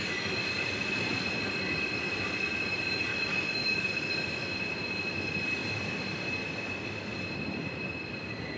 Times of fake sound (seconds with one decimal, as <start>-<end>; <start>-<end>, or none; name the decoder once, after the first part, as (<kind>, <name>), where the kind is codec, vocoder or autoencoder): 3.1-4.1 (autoencoder, DAC-VAE)